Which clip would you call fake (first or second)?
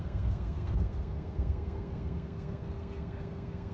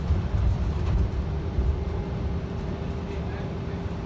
first